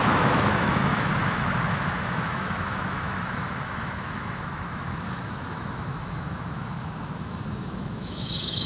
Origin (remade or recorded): remade